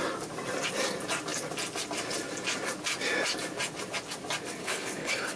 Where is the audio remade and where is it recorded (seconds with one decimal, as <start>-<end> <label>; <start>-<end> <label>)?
0.0-4.6 recorded; 4.6-5.4 remade